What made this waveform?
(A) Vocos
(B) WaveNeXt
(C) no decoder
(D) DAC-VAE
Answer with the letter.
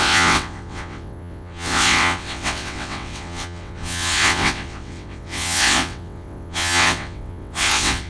B